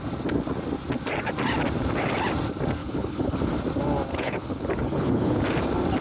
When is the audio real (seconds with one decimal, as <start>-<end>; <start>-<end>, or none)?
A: 0.0-2.8; 3.5-4.1; 5.4-6.0